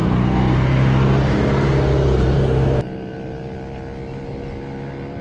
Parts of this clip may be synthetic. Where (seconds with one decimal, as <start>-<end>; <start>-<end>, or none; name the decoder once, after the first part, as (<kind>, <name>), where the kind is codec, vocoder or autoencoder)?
none

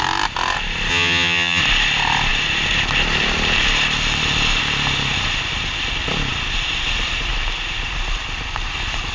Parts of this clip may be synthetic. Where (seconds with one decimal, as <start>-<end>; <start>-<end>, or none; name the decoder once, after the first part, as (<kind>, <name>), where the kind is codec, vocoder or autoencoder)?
0.9-1.6 (vocoder, HiFi-GAN)

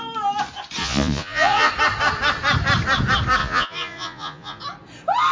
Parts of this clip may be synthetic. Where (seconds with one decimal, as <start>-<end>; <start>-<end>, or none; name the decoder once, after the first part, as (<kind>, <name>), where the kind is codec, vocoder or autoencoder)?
0.8-1.7 (vocoder, Vocos); 3.4-4.6

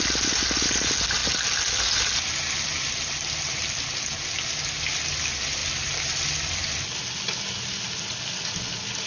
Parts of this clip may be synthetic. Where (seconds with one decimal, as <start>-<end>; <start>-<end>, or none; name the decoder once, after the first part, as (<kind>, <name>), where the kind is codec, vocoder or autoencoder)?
none

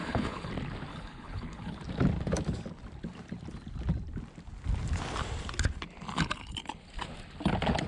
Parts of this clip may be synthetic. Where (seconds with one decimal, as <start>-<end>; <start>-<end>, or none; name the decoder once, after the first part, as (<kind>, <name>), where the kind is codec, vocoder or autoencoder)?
0.0-0.5 (codec, HILCodec); 0.9-1.8

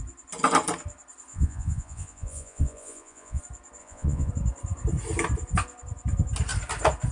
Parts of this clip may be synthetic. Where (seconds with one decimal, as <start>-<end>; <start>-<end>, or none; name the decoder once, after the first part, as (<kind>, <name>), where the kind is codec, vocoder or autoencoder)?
1.3-3.4 (vocoder, Vocos); 3.8-4.3

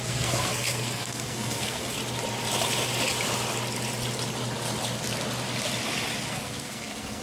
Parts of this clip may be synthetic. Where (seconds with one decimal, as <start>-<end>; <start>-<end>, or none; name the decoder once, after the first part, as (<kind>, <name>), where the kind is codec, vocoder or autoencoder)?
0.0-2.0 (codec, SNAC); 6.3-7.2